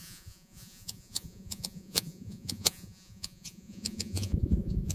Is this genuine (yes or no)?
no